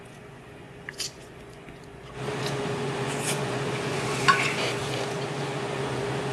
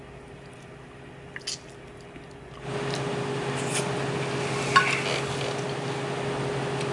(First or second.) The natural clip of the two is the second